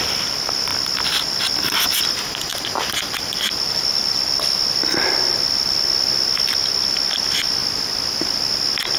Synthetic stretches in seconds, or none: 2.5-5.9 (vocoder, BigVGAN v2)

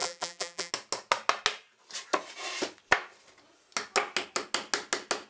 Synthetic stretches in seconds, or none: 0.0-0.7 (vocoder, BigVGAN v2)